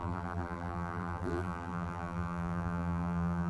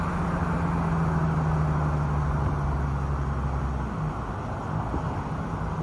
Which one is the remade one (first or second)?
first